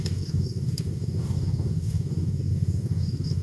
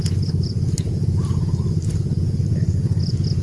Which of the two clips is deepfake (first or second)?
first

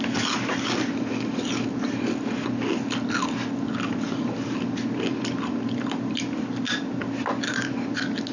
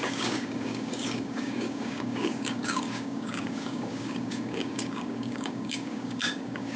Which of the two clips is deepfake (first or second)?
second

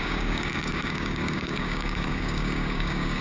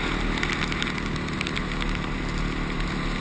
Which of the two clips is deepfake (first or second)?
first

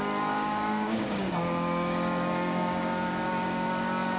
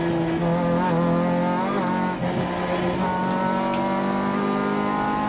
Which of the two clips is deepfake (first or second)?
first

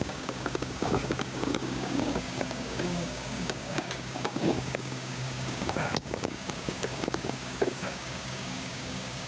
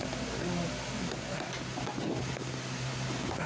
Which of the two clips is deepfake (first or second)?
first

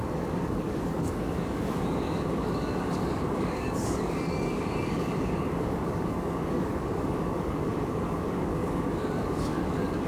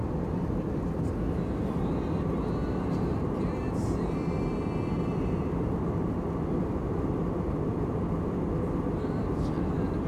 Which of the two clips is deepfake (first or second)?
first